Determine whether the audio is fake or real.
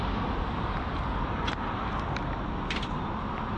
real